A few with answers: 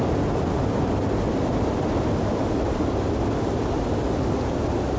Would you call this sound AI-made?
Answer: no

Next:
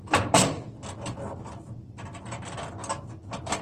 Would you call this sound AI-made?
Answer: no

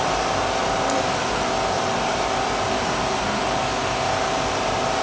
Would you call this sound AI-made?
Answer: no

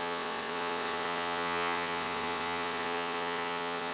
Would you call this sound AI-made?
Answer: yes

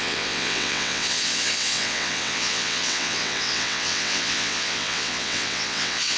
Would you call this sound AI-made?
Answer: yes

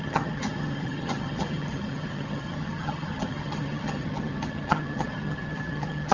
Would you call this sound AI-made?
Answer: yes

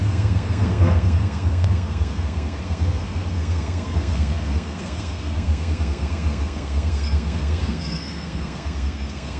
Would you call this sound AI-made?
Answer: yes